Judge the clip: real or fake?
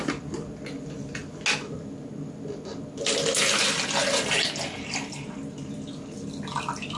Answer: real